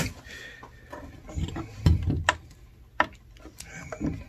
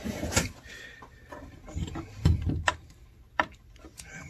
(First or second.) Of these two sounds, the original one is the first